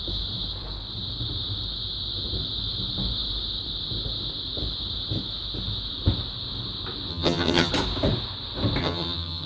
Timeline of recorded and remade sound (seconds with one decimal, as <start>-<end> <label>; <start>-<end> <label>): 0.0-7.1 recorded; 7.1-7.7 remade; 7.7-8.8 recorded; 8.8-9.5 remade